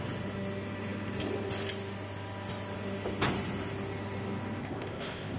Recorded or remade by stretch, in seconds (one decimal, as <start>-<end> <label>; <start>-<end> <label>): 0.0-4.6 recorded; 4.6-5.4 remade